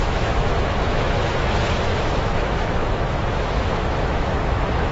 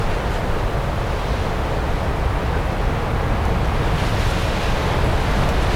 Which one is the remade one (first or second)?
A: first